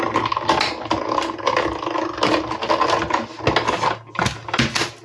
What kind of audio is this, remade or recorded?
recorded